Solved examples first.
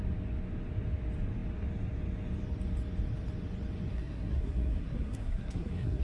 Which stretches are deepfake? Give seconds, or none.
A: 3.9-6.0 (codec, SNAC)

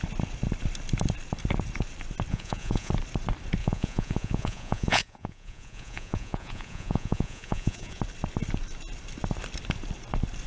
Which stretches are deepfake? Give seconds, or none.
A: 2.3-2.9 (vocoder, Vocos); 3.6-8.0

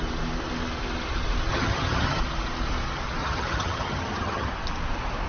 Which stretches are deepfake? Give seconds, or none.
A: 1.5-2.2 (vocoder, HiFi-GAN); 3.2-4.5

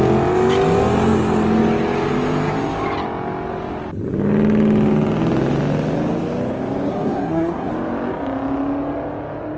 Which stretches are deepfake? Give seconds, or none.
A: 6.9-7.7 (codec, SNAC)

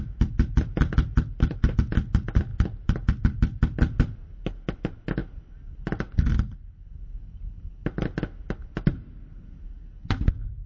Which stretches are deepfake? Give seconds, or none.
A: none